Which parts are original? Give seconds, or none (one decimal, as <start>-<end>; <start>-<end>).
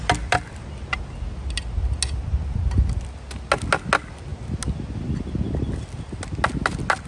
0.0-7.1